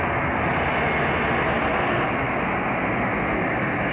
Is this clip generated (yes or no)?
no